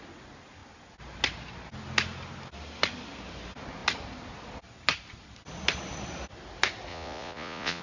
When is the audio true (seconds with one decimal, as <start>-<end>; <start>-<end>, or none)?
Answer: 0.0-6.9